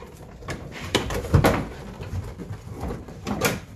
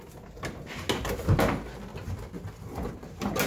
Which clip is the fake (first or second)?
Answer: first